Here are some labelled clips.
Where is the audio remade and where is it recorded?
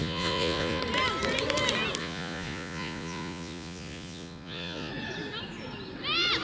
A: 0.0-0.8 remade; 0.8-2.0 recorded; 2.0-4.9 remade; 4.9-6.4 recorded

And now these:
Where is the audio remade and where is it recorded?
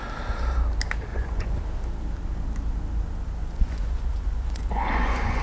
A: 0.0-1.1 recorded; 1.1-1.6 remade; 1.6-3.4 recorded; 3.4-5.4 remade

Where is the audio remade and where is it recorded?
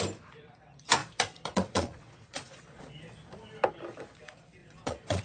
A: 0.0-1.0 recorded; 1.0-2.8 remade; 2.8-4.6 recorded; 4.6-5.2 remade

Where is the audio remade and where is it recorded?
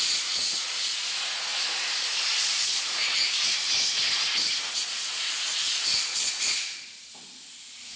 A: 0.0-8.0 remade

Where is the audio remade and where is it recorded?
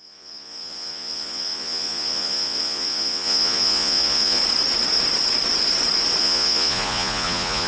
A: 0.0-4.4 remade; 4.4-6.2 recorded; 6.2-7.7 remade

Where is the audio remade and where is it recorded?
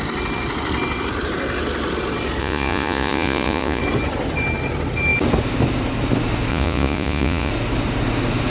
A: 0.0-2.4 recorded; 2.4-3.8 remade; 3.8-6.5 recorded; 6.5-7.5 remade; 7.5-8.5 recorded